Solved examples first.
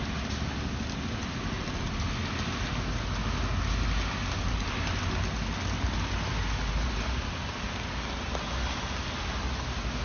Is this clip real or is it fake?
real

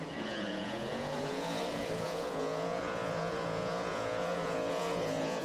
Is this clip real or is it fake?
fake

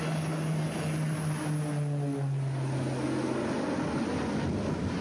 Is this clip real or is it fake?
real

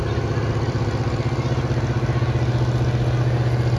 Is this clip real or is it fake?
real